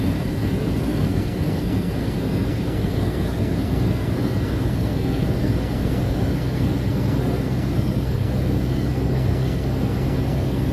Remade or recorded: remade